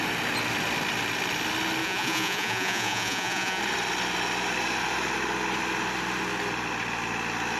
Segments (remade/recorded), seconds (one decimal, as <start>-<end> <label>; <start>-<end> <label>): 0.0-1.8 recorded; 1.8-3.6 remade; 3.6-7.6 recorded